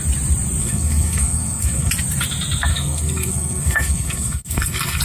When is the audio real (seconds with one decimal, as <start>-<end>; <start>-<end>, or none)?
0.0-0.6; 1.9-2.7